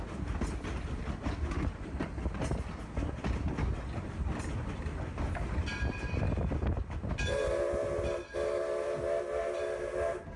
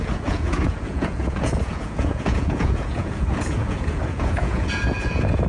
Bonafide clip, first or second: first